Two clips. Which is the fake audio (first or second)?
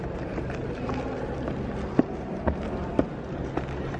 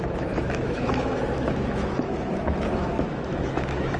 second